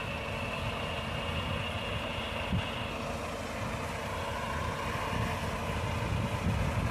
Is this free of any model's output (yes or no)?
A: yes